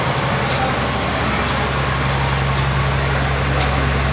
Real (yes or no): yes